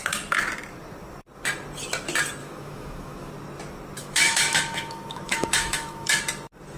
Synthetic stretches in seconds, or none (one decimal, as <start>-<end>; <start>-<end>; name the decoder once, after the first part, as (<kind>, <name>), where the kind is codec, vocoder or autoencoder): 2.4-3.3 (autoencoder, DAC-VAE); 4.0-6.2